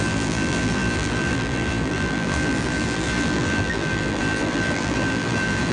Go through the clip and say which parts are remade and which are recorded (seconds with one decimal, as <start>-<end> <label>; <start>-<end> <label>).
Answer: 0.0-5.7 remade